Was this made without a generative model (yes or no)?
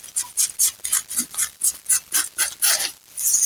no